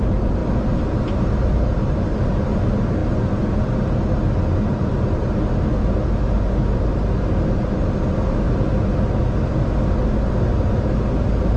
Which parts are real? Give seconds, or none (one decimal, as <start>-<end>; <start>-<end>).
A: 0.0-11.6